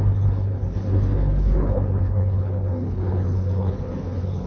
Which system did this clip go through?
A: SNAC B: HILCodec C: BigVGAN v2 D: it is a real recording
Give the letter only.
B